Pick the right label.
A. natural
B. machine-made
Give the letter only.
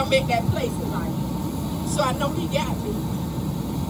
A